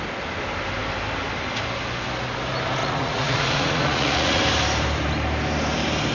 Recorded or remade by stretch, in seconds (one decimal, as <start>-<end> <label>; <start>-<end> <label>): 0.0-2.8 recorded; 2.8-4.4 remade; 4.4-6.1 recorded